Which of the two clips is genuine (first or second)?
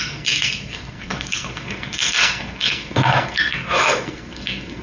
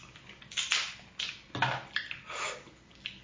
second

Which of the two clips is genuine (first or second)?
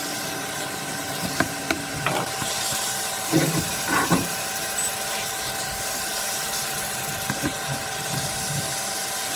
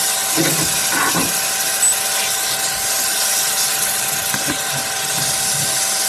second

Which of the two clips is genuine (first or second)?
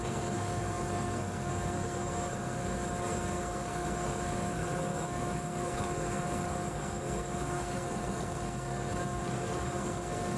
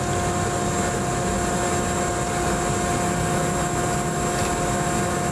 second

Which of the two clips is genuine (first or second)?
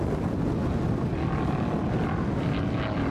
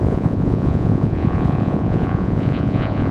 first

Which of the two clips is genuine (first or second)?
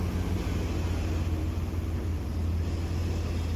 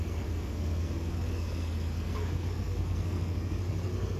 first